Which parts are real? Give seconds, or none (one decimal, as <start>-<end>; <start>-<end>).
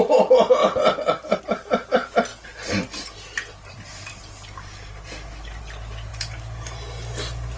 0.0-0.6; 1.4-2.3; 5.6-7.6